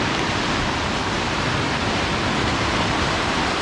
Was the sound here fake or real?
real